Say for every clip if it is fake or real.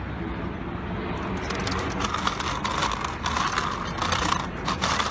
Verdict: real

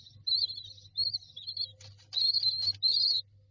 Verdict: real